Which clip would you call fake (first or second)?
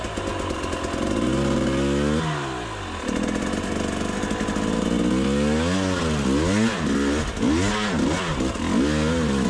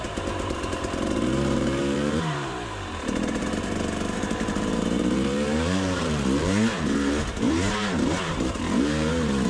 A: second